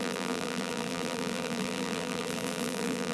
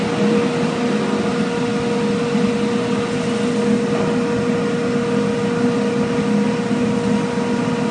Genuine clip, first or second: second